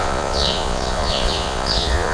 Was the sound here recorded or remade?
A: remade